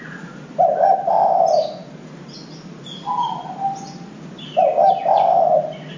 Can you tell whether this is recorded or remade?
recorded